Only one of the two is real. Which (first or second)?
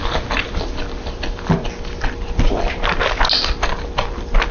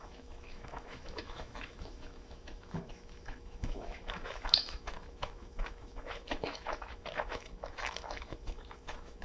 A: first